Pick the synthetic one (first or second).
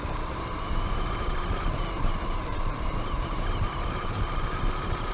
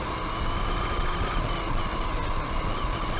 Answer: first